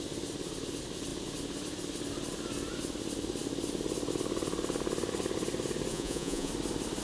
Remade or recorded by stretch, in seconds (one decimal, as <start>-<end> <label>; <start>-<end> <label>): 0.0-5.9 recorded; 5.9-6.5 remade; 6.5-7.0 recorded